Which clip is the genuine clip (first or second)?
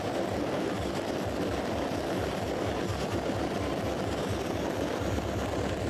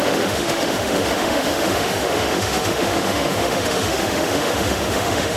first